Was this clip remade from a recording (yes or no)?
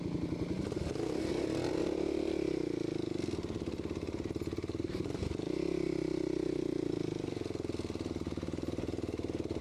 no